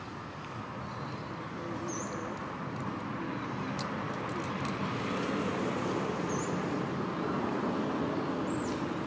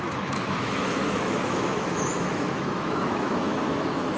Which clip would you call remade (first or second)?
second